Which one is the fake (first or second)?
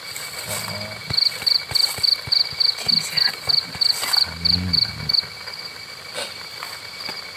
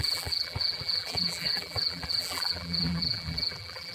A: second